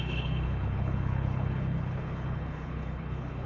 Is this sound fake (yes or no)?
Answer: yes